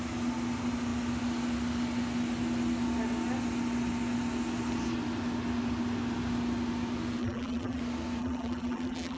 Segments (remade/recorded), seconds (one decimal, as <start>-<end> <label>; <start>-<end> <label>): 0.0-7.2 recorded; 7.2-7.8 remade; 7.8-8.2 recorded; 8.2-9.2 remade